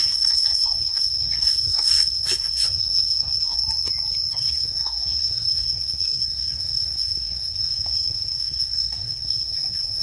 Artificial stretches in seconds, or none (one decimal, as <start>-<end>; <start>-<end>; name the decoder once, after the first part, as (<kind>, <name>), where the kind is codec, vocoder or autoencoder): 0.0-3.6 (codec, SNAC); 4.3-10.0

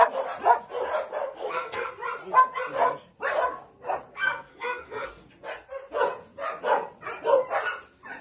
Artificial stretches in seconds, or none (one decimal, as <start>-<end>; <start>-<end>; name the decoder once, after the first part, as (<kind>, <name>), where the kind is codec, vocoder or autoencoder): 1.2-1.9 (codec, SNAC); 4.1-5.1

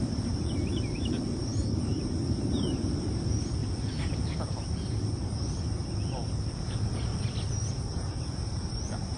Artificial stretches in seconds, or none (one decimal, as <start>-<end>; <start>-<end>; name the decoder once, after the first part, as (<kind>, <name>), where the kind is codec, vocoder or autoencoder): 0.0-3.6 (vocoder, BigVGAN v2); 6.5-7.1; 7.7-9.2

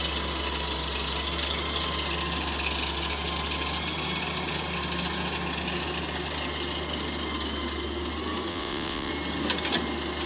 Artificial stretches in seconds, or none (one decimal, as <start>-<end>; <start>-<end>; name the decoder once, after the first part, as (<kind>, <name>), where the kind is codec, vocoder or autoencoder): 8.5-9.1 (vocoder, WaveNeXt)